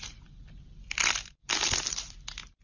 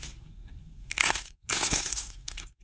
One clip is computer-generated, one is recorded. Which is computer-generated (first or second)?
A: second